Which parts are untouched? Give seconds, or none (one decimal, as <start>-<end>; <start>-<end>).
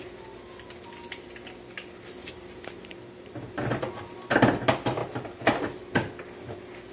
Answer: 0.0-2.2; 3.7-6.9